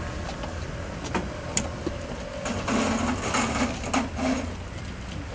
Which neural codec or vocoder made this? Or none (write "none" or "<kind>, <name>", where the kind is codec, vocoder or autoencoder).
none